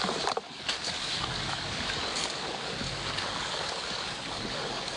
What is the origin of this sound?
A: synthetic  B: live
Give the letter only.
A